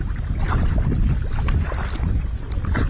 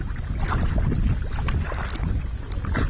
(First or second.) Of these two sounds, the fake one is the first